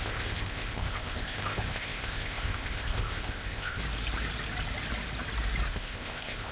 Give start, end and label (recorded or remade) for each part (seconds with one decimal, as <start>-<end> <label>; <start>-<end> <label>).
0.0-3.8 remade; 3.8-5.7 recorded; 5.7-6.5 remade